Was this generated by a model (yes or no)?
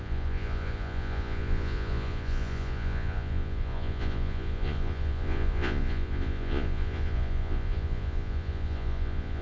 yes